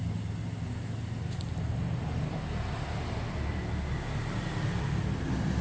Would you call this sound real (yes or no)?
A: yes